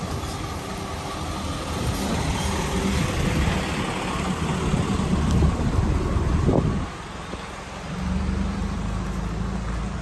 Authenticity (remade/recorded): recorded